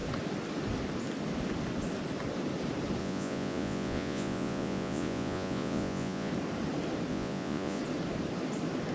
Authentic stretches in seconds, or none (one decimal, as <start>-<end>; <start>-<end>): 0.0-3.0; 6.3-7.1; 7.8-8.9